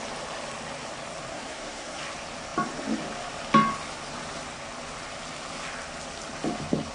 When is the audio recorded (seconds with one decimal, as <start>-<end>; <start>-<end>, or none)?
0.0-1.3; 2.0-6.9